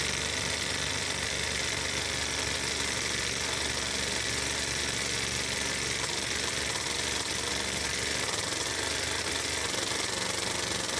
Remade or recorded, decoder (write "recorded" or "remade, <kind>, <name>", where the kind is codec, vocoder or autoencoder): recorded